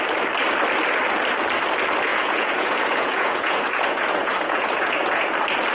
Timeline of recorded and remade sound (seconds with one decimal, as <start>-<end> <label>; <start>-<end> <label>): 0.0-2.1 recorded; 2.1-5.3 remade; 5.3-5.7 recorded